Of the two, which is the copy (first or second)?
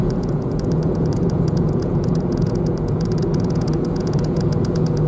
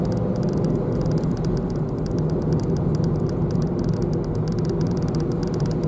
first